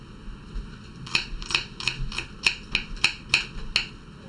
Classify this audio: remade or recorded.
recorded